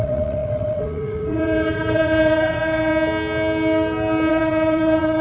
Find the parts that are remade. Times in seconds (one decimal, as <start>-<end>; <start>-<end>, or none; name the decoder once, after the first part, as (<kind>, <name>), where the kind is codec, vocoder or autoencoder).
0.0-2.9 (vocoder, WaveNeXt); 4.3-5.2